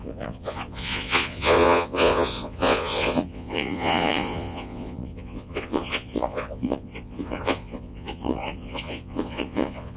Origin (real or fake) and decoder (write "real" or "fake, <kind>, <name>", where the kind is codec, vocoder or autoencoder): fake, vocoder, Vocos